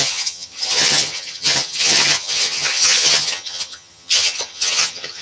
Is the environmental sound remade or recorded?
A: remade